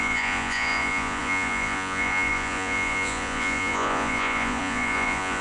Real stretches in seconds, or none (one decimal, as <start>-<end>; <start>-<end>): none